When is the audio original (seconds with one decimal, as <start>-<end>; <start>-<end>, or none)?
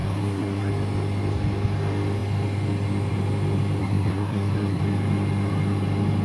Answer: 0.7-3.8; 4.8-6.2